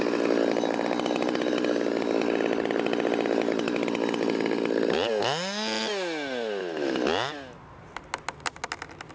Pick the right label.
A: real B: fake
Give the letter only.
A